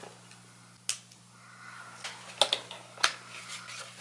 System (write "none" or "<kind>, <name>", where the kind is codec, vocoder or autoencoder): none